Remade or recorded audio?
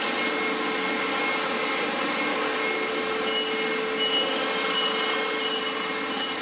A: recorded